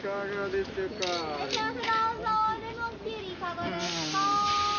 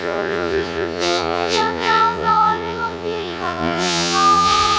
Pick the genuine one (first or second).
first